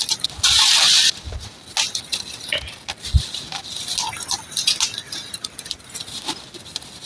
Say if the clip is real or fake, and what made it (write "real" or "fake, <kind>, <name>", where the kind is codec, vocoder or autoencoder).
real